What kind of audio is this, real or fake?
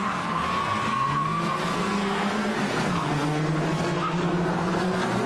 fake